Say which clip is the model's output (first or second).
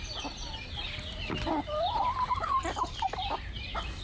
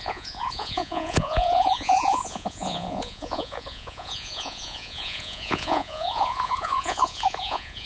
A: second